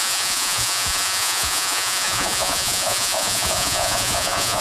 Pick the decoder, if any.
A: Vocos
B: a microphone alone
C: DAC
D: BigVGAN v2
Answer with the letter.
A